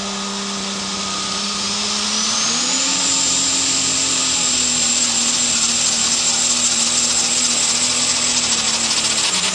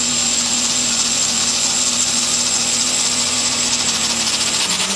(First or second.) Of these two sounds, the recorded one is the first